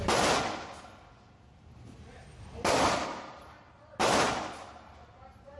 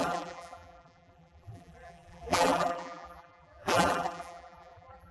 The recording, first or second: first